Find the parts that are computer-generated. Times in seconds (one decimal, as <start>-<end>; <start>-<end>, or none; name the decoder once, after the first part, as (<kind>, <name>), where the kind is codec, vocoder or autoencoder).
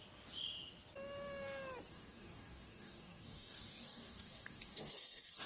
1.9-5.5 (codec, DAC)